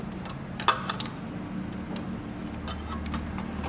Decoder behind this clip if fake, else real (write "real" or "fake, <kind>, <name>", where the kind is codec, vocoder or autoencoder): real